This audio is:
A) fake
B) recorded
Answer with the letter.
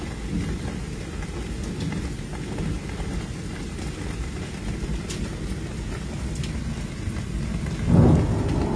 B